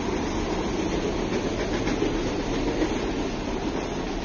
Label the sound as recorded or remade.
recorded